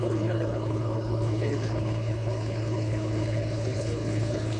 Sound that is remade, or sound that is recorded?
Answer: remade